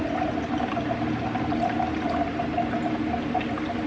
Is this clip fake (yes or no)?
no